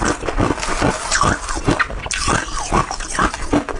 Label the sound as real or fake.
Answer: real